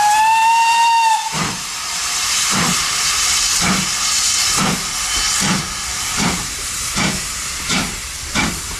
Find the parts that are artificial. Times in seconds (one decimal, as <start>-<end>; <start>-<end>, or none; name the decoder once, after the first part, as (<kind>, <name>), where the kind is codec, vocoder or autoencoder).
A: 0.4-3.2 (vocoder, BigVGAN v2); 5.9-7.9